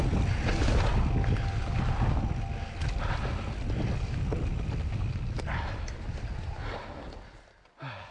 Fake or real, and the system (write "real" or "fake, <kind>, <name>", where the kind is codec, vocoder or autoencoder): real